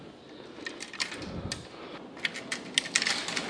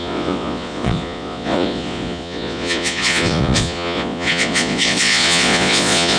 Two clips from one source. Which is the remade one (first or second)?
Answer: second